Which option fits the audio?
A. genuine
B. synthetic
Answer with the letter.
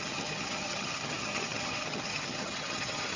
B